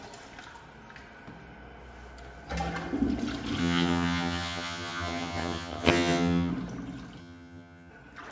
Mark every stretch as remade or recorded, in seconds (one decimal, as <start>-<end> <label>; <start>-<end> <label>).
0.0-3.6 recorded; 3.6-6.5 remade; 6.5-7.2 recorded; 7.2-7.9 remade; 7.9-8.3 recorded